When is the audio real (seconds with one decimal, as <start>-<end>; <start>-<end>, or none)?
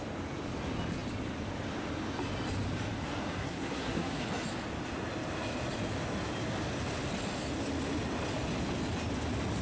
0.0-3.4; 4.2-9.6